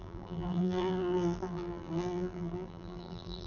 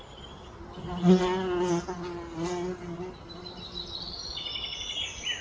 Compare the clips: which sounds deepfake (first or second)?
first